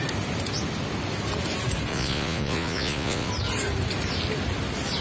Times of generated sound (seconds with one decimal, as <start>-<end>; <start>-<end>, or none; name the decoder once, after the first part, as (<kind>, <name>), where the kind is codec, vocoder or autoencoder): 1.9-3.3 (vocoder, Vocos)